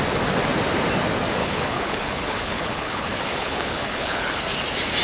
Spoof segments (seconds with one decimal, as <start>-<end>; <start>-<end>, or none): 1.4-4.4